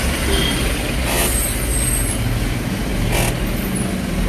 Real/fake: real